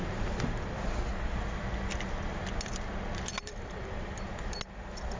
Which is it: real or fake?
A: real